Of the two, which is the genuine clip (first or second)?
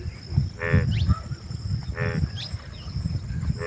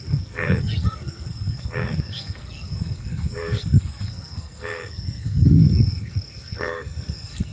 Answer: first